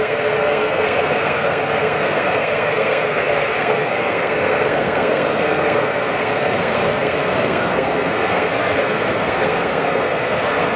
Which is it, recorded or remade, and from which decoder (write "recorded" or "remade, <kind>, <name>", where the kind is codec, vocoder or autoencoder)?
remade, codec, SNAC